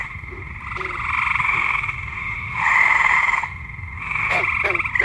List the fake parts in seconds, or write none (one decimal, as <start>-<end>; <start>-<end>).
0.0-0.5; 1.4-4.4